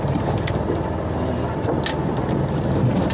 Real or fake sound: real